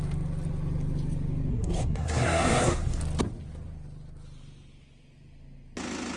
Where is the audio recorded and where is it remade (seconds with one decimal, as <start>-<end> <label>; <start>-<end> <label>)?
0.0-1.5 recorded; 1.5-3.0 remade; 3.0-6.2 recorded

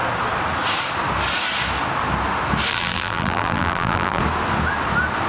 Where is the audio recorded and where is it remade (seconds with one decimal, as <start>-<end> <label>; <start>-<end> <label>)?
0.0-2.7 recorded; 2.7-4.2 remade; 4.2-5.3 recorded